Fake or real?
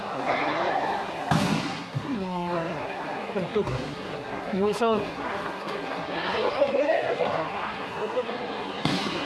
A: fake